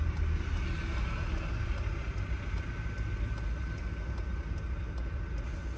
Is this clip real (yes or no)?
yes